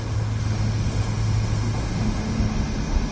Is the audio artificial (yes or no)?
yes